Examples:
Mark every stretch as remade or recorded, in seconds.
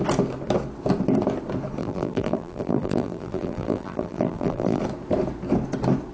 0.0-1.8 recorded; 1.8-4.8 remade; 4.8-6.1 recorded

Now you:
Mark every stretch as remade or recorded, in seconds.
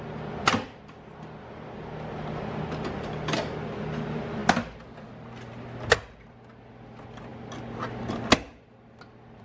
0.0-9.4 recorded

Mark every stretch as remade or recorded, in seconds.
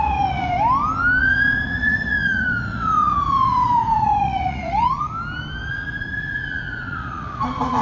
0.0-0.5 remade; 0.5-1.2 recorded; 1.2-5.1 remade; 5.1-5.7 recorded; 5.7-7.8 remade